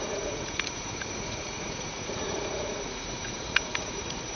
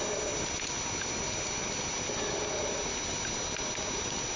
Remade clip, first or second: first